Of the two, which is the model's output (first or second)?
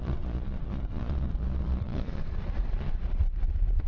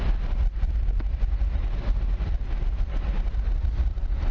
first